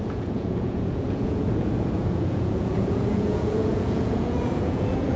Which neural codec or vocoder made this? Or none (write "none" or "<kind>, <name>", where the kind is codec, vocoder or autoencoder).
vocoder, Vocos